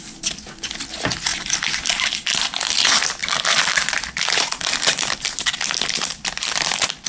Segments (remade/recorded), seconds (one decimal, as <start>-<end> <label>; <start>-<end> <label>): 0.0-7.1 recorded